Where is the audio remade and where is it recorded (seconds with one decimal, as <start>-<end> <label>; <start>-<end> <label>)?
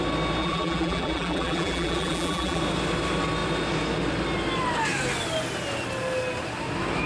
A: 0.0-0.4 recorded; 0.4-2.6 remade; 2.6-7.1 recorded